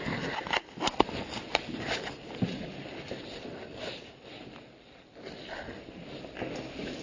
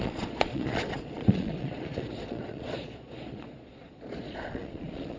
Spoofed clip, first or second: second